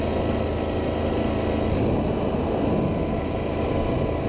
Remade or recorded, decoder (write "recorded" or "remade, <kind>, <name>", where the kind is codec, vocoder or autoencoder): recorded